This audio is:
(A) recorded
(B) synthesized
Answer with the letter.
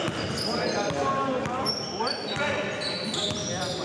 A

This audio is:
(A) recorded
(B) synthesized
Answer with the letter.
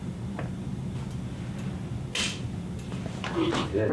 A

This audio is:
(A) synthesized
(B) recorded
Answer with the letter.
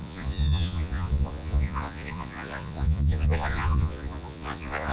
A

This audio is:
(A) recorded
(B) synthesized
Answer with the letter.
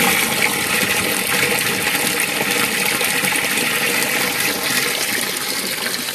A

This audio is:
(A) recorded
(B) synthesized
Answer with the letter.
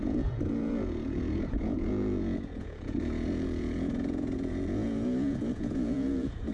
B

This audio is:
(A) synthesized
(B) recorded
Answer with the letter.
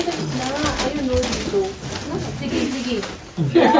B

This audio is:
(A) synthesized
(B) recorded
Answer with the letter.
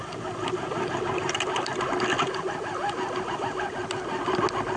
B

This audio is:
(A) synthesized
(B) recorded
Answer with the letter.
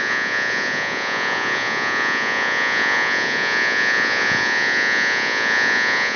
A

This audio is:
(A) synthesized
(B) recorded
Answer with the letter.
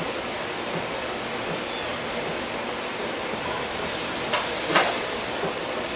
B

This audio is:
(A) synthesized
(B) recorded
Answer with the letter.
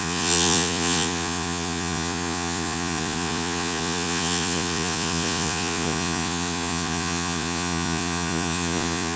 A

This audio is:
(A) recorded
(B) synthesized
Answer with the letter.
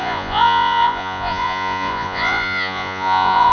B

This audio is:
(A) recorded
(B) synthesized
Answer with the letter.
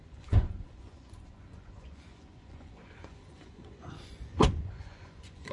B